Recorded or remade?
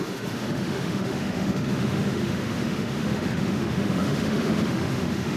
remade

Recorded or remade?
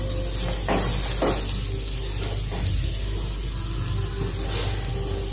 recorded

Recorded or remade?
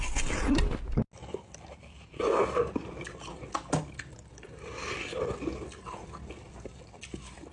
recorded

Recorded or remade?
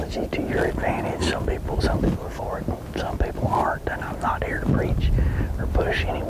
recorded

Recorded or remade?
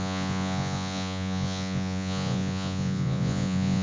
remade